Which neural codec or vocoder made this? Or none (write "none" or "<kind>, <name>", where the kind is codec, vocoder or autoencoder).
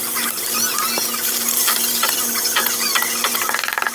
none